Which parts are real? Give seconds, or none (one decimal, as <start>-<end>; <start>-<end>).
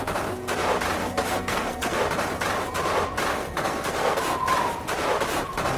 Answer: 0.0-1.0; 2.0-3.3; 4.2-5.8